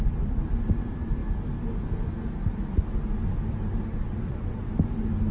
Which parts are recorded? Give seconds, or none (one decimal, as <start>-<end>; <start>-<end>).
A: 0.0-3.9; 4.7-5.3